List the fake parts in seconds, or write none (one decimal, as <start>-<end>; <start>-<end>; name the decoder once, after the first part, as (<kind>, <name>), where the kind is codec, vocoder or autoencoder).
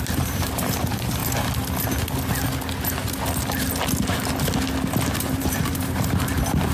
0.0-1.2 (vocoder, BigVGAN v2); 5.2-6.7